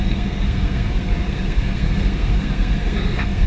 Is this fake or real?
fake